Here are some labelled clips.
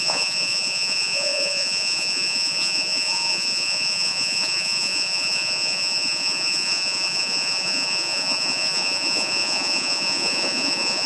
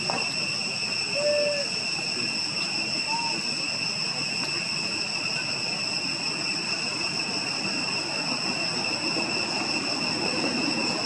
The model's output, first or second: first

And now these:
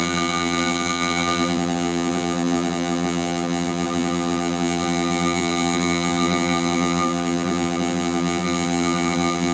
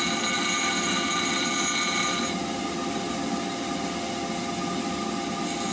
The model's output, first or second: first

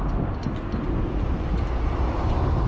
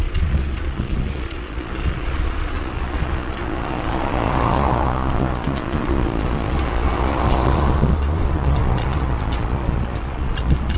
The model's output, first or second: second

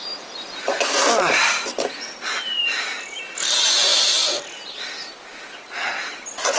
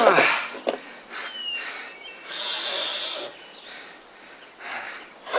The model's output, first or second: first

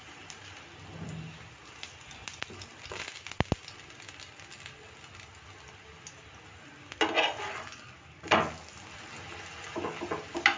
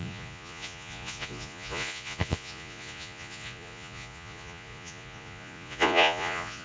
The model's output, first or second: second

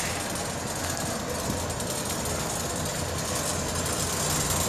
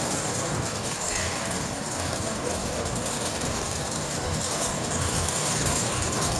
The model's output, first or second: second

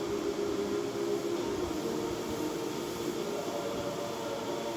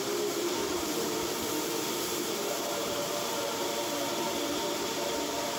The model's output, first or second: second